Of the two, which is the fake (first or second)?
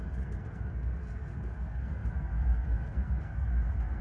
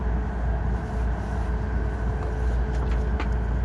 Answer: first